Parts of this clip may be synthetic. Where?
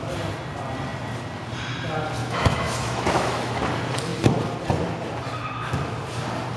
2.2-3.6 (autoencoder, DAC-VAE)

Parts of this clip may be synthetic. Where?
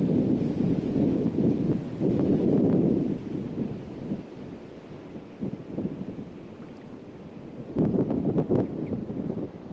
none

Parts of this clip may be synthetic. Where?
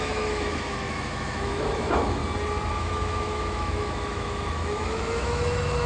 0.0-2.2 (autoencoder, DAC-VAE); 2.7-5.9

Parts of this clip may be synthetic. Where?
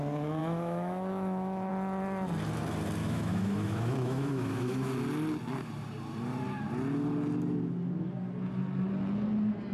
0.4-1.7 (autoencoder, DAC-VAE); 3.0-4.9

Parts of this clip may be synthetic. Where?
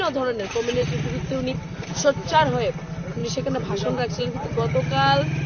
1.9-2.5 (autoencoder, DAC-VAE)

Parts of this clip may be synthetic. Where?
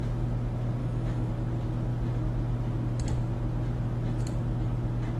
0.8-1.3 (autoencoder, DAC-VAE)